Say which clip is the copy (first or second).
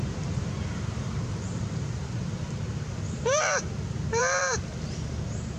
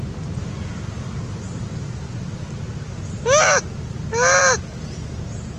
first